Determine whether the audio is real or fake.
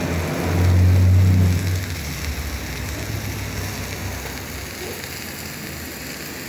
real